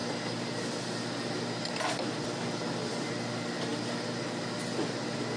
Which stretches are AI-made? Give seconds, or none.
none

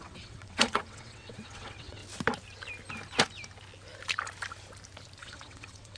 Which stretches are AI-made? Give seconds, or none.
0.0-2.0; 5.2-6.0

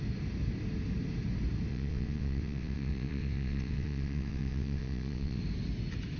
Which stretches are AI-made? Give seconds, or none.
1.7-5.4

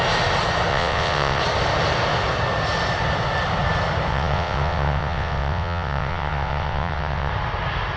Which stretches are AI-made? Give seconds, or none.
0.7-1.4; 4.1-7.3

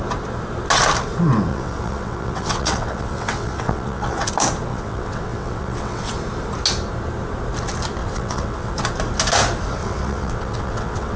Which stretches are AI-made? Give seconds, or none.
1.5-4.3; 4.7-6.1; 8.0-8.7; 9.8-11.2